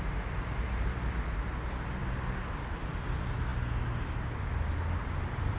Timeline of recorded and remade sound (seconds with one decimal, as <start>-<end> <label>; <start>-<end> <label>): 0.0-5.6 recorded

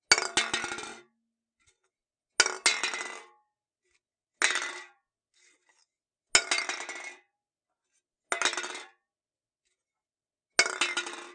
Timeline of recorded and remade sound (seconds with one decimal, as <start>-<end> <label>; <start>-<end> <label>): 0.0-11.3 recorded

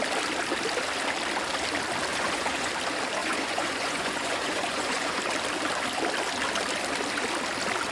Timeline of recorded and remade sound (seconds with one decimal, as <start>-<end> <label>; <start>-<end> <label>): 0.0-2.1 recorded; 2.1-2.7 remade; 2.7-3.2 recorded; 3.2-5.2 remade; 5.2-7.9 recorded